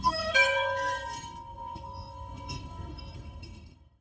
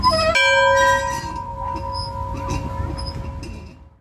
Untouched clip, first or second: second